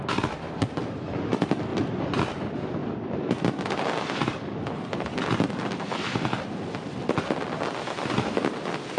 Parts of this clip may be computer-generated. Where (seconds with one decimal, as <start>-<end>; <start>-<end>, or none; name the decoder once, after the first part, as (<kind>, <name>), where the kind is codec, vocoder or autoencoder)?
1.7-2.2 (vocoder, BigVGAN v2); 2.8-5.5